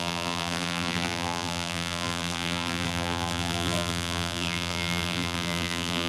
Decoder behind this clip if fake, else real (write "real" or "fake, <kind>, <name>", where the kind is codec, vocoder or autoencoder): fake, vocoder, BigVGAN v2